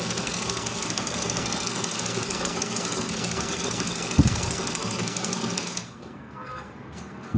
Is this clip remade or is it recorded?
remade